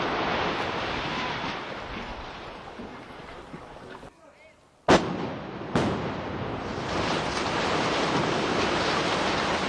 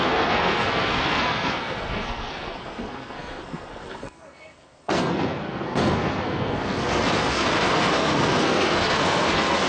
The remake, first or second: second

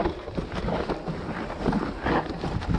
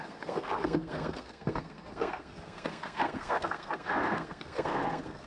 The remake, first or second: second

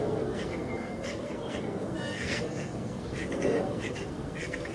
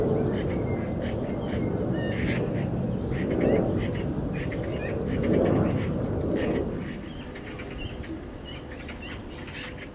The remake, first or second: first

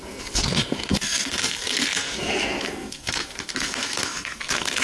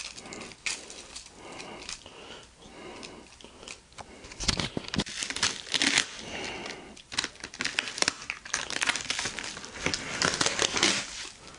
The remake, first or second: first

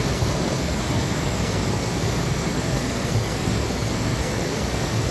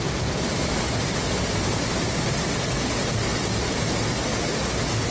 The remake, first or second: first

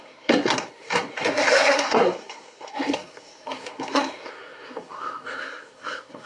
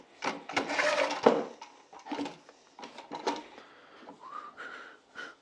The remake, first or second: first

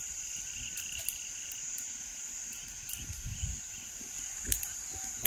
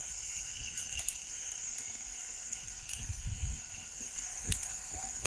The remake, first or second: second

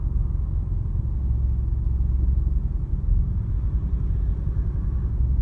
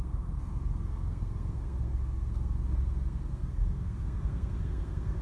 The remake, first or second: second